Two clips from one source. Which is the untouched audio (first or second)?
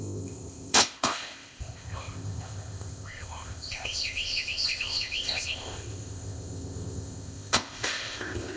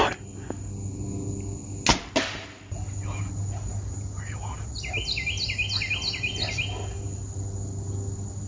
second